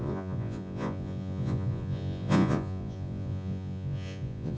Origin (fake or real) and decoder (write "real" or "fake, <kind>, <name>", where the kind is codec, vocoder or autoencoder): fake, vocoder, Vocos